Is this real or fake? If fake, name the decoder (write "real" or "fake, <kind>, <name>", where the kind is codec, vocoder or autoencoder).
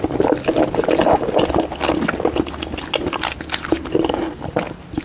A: real